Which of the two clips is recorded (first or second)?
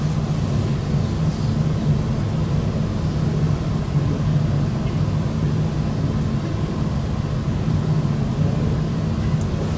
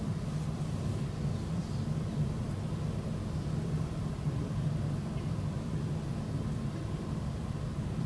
first